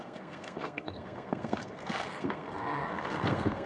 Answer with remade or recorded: remade